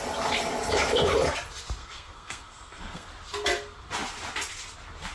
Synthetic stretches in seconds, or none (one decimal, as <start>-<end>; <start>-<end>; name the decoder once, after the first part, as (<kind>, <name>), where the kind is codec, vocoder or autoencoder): 1.8-3.1 (codec, SNAC)